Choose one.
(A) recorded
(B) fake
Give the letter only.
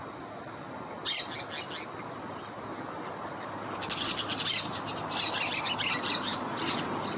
A